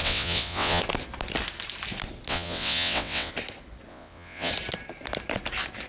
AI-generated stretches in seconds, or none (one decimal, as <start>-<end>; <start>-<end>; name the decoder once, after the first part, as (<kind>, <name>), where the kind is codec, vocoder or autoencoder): 0.0-0.8 (vocoder, WaveNeXt); 2.3-3.3; 3.9-4.5